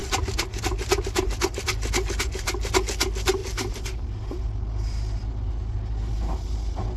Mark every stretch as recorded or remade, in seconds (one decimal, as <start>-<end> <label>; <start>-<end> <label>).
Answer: 0.0-7.0 recorded